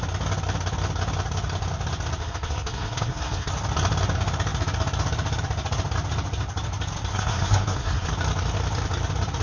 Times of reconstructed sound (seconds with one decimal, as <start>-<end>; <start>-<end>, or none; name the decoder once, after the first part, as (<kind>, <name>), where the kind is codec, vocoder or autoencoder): 2.2-3.5 (codec, SNAC); 7.1-8.1